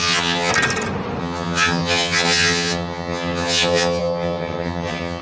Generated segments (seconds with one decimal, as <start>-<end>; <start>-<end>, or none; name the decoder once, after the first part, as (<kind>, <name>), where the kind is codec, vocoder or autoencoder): 0.0-0.5 (vocoder, HiFi-GAN); 1.2-5.2